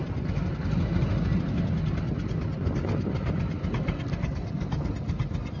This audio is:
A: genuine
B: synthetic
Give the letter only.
A